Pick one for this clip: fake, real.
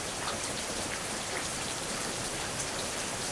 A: fake